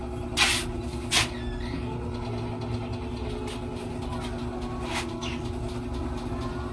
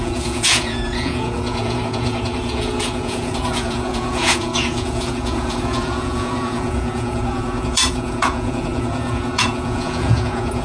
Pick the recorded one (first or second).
first